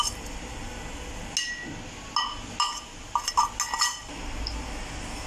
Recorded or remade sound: recorded